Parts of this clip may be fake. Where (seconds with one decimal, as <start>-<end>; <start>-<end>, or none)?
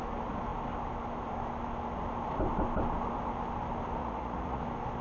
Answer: 4.0-4.6